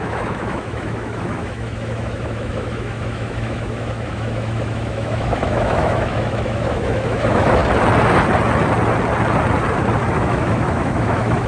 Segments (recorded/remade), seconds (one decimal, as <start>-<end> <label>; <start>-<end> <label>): 0.0-7.6 remade; 7.6-10.1 recorded; 10.1-11.5 remade